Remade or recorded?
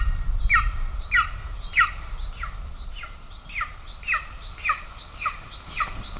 recorded